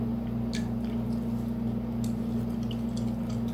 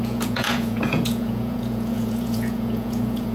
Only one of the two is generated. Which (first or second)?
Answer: second